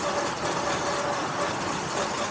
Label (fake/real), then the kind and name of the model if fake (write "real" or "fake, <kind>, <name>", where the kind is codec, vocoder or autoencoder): real